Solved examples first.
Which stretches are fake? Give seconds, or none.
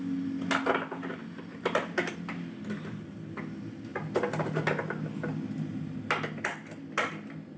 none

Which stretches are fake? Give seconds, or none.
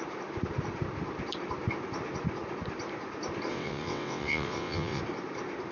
3.5-5.0 (vocoder, WaveNeXt)